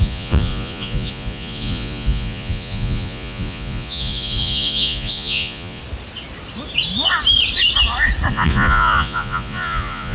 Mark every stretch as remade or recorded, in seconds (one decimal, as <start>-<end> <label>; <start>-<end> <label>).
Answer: 0.0-5.8 remade; 5.8-8.3 recorded; 8.3-10.1 remade